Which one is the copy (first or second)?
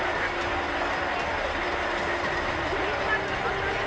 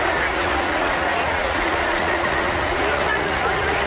second